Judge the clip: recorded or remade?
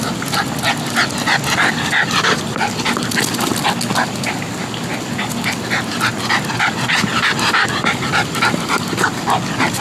recorded